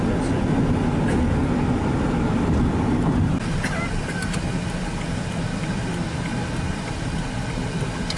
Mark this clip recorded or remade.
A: recorded